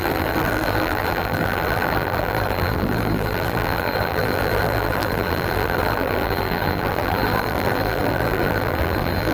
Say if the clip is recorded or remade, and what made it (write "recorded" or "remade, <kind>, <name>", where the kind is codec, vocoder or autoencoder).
remade, vocoder, BigVGAN v2